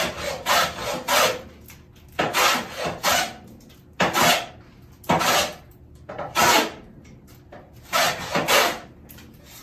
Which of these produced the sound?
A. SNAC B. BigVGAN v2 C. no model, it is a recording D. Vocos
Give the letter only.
C